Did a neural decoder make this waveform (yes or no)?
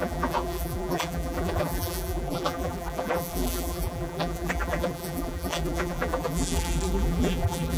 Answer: yes